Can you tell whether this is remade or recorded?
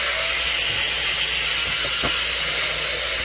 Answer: recorded